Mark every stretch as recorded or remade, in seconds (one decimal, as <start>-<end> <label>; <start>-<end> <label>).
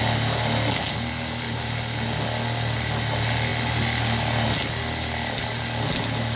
0.0-6.4 recorded